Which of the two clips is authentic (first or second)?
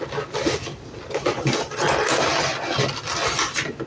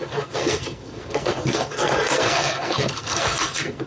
first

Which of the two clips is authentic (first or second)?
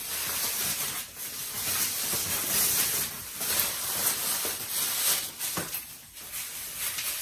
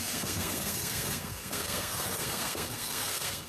first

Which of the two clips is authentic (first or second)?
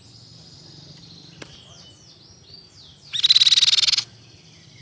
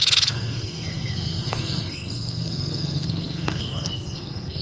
first